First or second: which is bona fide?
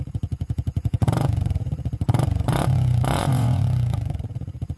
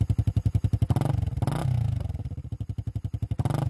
second